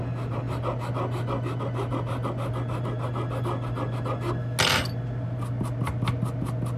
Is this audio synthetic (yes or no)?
no